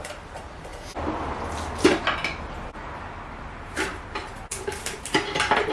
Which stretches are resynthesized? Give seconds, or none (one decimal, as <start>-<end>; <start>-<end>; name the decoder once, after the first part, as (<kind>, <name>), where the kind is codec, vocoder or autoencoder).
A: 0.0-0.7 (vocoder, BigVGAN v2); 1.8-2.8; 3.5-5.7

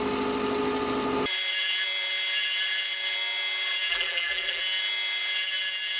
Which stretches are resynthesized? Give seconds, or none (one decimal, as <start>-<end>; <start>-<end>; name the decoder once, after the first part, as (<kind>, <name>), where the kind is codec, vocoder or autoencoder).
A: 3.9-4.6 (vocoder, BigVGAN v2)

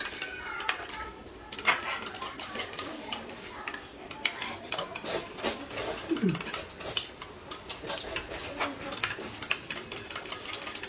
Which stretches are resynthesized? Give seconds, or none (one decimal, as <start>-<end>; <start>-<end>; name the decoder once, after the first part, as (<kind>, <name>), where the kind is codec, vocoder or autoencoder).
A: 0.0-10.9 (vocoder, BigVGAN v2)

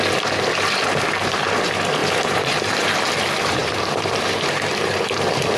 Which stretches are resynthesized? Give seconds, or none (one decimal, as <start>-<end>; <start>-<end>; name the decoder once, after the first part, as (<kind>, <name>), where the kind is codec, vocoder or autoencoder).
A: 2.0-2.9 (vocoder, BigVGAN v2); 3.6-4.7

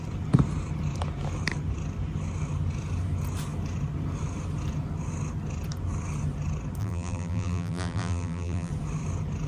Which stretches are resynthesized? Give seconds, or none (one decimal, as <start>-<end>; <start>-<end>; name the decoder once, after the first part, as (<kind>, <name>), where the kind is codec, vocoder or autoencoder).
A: 6.8-8.7 (vocoder, BigVGAN v2)